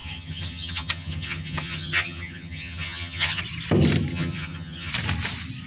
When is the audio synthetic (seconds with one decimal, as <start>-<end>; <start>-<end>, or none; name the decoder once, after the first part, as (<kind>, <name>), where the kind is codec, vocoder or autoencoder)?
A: 0.0-3.4 (vocoder, HiFi-GAN); 4.1-4.9